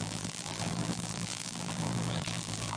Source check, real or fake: fake